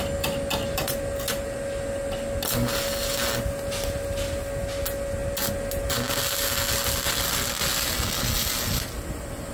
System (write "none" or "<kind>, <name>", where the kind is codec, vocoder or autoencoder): none